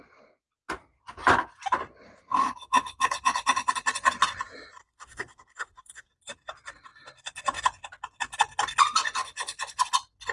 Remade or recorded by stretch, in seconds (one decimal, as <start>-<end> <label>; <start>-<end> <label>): 0.0-4.8 recorded; 4.8-6.1 remade; 6.1-10.3 recorded